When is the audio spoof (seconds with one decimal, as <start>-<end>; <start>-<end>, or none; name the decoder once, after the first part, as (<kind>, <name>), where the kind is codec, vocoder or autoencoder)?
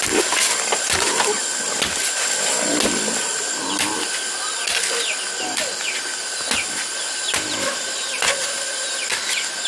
none